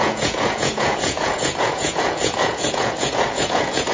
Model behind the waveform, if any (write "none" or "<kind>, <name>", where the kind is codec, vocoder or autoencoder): vocoder, Vocos